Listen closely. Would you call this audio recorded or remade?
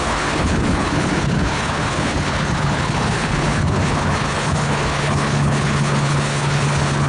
remade